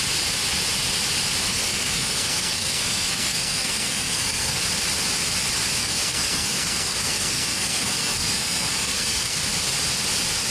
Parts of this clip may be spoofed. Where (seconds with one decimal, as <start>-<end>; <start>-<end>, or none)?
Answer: 1.5-4.6; 5.8-9.4

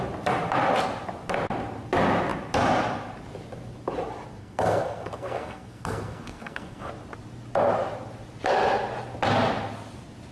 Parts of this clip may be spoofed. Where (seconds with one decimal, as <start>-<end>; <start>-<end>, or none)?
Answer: 4.4-6.9

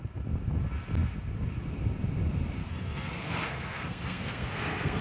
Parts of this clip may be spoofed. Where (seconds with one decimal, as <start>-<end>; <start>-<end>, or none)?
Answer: 2.6-5.0